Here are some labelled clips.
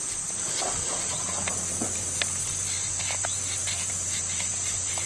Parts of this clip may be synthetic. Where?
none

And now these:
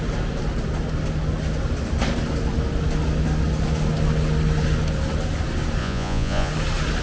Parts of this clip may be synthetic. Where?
5.8-6.5 (vocoder, Vocos)